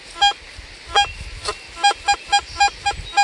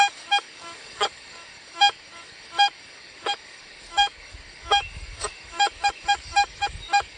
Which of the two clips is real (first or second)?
first